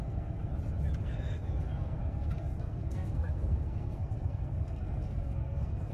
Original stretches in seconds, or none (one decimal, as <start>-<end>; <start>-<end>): 0.5-1.0